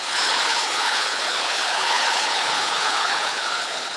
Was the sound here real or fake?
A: fake